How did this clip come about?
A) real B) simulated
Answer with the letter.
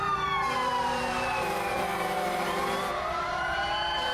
B